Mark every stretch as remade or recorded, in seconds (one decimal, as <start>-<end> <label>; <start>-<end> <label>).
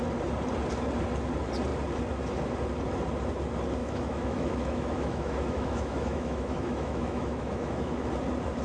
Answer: 0.0-3.8 recorded; 3.8-8.1 remade; 8.1-8.6 recorded